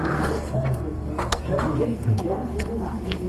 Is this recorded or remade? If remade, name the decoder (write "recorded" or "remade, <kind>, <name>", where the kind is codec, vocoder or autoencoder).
remade, codec, SNAC